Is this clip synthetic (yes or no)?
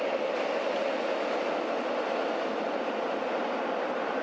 no